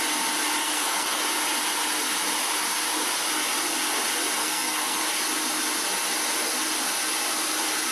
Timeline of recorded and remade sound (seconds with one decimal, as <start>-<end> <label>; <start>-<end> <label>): 0.0-0.6 recorded; 0.6-1.2 remade; 1.2-4.4 recorded; 4.4-5.0 remade; 5.0-7.9 recorded

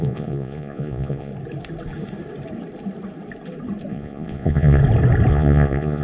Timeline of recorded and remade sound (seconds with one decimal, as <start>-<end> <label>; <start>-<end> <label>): 0.0-1.3 remade; 1.3-3.9 recorded; 3.9-4.8 remade; 4.8-5.3 recorded; 5.3-6.0 remade

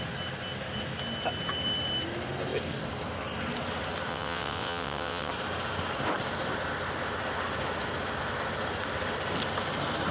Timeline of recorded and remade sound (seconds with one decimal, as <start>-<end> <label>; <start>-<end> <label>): 0.0-4.1 recorded; 4.1-5.3 remade; 5.3-10.1 recorded

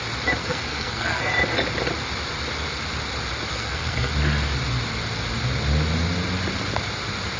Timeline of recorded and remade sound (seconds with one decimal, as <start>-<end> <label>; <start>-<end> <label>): 0.0-0.4 recorded; 0.4-1.3 remade; 1.3-3.5 recorded; 3.5-4.1 remade; 4.1-7.4 recorded

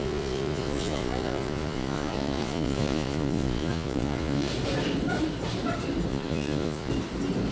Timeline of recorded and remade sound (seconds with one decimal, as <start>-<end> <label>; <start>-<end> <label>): 0.0-4.5 remade; 4.5-6.1 recorded; 6.1-6.9 remade; 6.9-7.5 recorded

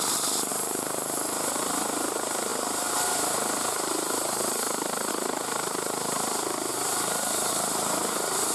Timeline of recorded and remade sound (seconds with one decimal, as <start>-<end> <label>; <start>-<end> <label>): 0.0-8.5 remade

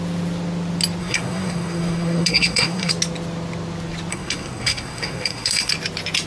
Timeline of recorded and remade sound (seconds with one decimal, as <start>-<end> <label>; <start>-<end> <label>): 0.0-1.0 recorded; 1.0-2.9 remade; 2.9-4.1 recorded; 4.1-5.7 remade; 5.7-6.3 recorded